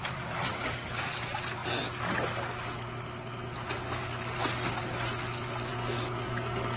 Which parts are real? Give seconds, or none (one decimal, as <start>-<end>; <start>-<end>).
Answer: 0.0-0.5; 1.1-5.7